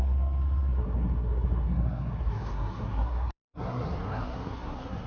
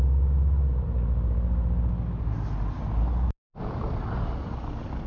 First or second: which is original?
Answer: second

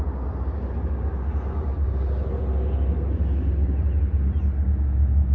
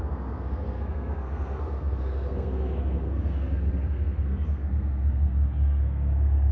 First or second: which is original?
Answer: first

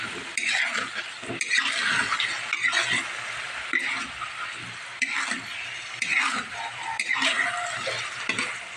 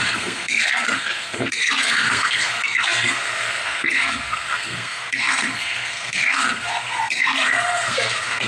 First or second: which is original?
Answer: first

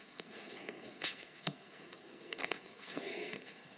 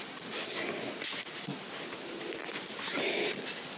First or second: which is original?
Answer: second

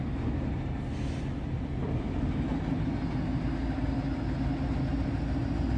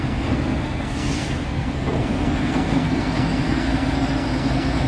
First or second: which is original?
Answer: first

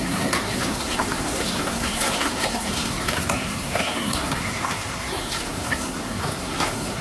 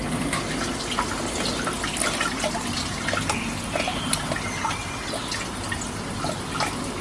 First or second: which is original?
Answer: second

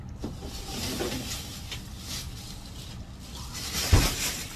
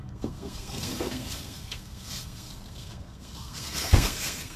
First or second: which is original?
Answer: first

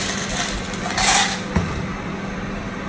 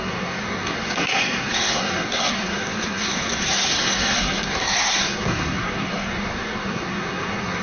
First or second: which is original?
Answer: first